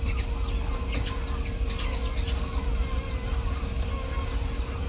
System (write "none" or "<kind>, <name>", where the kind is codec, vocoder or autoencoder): none